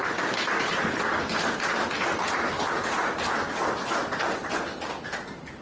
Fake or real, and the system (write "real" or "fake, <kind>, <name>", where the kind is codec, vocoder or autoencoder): real